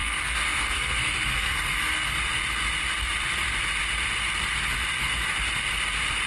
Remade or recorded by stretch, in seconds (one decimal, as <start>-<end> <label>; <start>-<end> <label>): 0.0-2.1 remade; 2.1-6.3 recorded